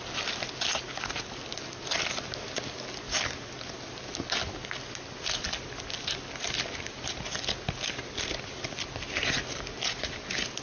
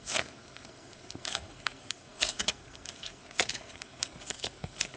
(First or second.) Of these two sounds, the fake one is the second